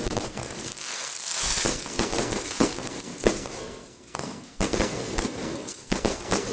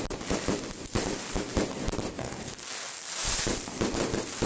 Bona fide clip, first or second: second